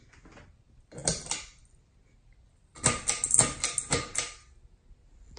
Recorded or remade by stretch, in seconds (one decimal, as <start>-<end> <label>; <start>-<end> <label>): 0.0-5.4 recorded